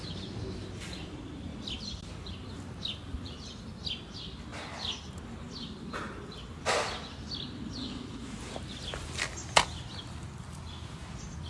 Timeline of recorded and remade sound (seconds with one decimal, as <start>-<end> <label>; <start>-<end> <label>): 0.0-7.8 recorded; 7.8-8.4 remade; 8.4-11.5 recorded